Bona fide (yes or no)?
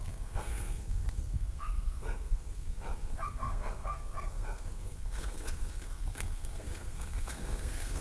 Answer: no